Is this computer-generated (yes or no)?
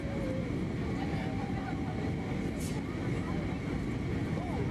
no